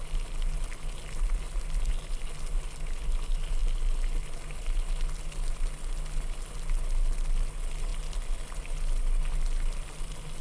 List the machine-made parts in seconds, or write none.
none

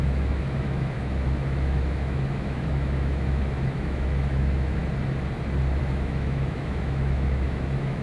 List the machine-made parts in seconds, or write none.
0.0-4.8 (autoencoder, DAC-VAE); 5.8-8.0

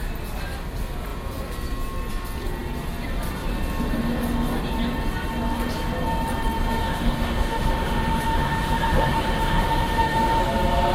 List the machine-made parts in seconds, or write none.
6.8-10.4 (autoencoder, DAC-VAE)

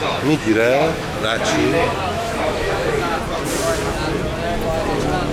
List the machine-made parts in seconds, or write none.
0.0-3.2 (autoencoder, DAC-VAE)